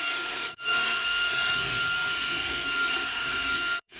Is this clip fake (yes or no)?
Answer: yes